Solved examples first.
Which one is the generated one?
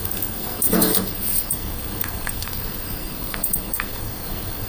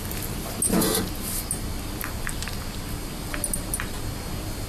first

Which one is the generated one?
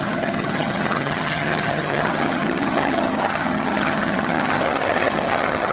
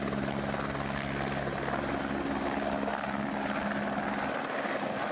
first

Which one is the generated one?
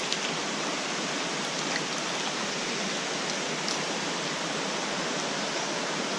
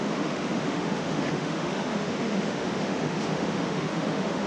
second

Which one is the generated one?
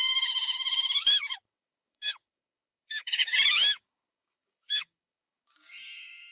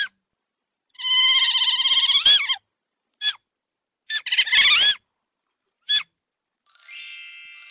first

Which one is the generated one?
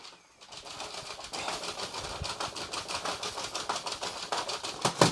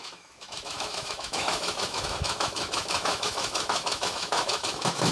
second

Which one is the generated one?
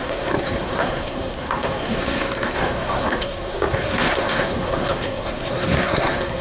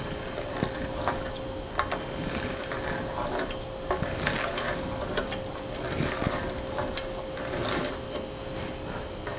first